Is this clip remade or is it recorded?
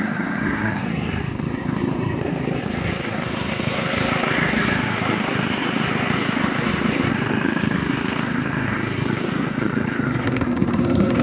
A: remade